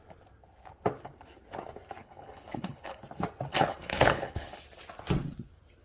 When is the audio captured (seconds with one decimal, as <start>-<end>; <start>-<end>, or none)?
0.0-2.0; 3.0-3.5; 4.6-5.8